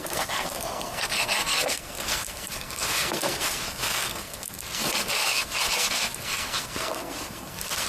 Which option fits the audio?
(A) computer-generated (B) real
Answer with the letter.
A